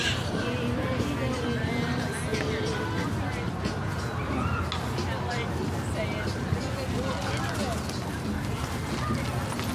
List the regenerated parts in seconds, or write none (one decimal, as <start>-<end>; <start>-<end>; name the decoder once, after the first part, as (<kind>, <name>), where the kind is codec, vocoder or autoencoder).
none